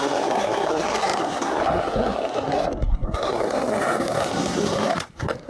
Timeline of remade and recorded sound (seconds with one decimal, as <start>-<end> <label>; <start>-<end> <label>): 0.0-5.5 remade